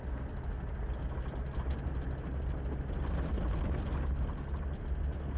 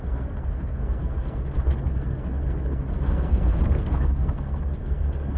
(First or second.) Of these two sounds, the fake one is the second